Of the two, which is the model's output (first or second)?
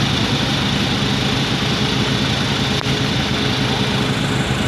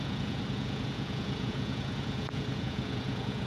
second